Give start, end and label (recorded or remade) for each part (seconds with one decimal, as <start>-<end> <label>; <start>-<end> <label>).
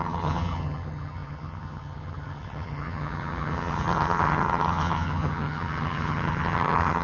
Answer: 0.0-7.0 remade